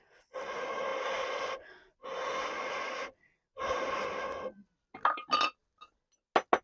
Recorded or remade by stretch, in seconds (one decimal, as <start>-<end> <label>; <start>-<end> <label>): 0.0-6.6 recorded